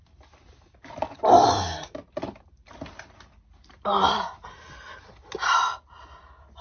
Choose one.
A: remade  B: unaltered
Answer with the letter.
B